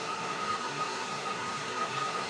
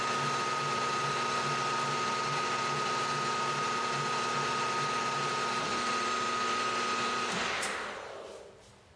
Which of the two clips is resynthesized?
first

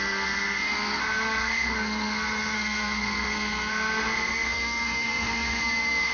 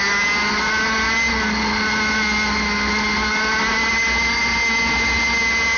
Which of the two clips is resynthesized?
first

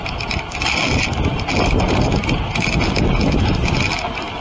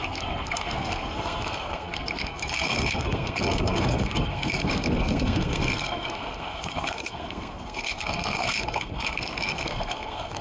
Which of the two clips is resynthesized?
second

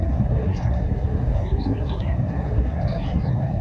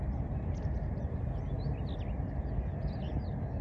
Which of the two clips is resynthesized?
first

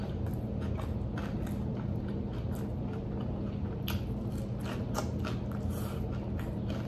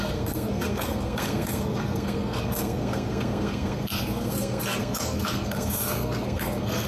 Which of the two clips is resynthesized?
second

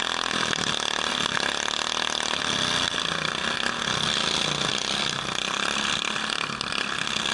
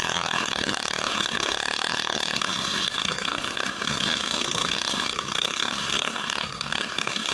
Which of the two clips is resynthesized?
second